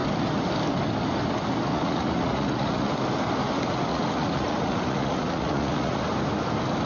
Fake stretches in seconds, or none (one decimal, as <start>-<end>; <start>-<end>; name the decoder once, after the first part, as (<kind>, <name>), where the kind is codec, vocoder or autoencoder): 1.7-2.9 (vocoder, Vocos); 3.9-6.0